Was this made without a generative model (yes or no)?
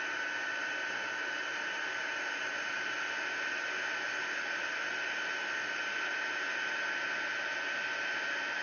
yes